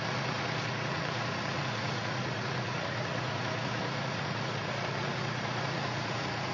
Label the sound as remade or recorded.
remade